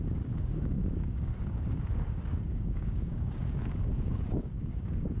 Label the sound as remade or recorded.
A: remade